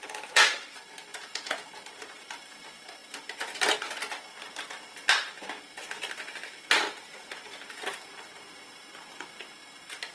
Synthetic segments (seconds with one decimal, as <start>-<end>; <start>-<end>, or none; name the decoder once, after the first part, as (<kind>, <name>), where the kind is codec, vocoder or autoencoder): 1.1-1.6 (vocoder, Vocos)